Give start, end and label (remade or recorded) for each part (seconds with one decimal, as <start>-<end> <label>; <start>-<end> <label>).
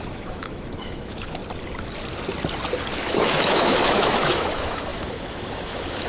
0.0-1.4 remade; 1.4-3.0 recorded; 3.0-6.1 remade